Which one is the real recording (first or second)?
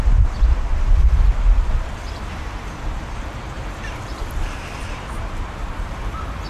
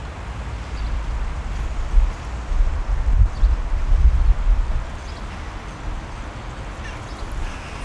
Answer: second